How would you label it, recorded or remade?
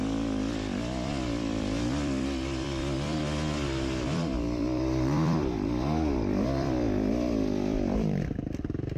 remade